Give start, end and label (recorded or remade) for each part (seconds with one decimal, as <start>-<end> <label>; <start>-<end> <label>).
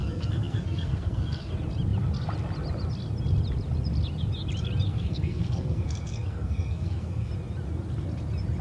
0.0-1.5 remade; 1.5-4.9 recorded; 4.9-7.3 remade; 7.3-8.6 recorded